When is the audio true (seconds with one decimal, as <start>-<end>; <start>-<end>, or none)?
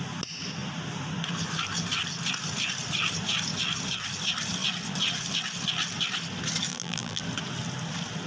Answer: 0.0-6.7; 7.2-8.3